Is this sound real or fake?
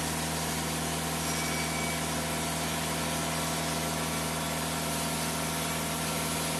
real